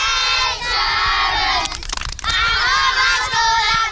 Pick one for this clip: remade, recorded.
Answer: recorded